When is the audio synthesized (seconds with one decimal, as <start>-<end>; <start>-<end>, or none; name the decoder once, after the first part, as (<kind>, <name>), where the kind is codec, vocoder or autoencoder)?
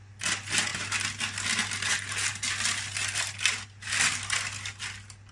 0.0-0.7 (vocoder, BigVGAN v2); 1.9-5.3